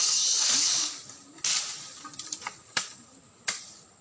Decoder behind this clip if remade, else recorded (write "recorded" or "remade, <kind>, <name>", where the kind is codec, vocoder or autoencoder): recorded